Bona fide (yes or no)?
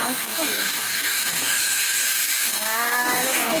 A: no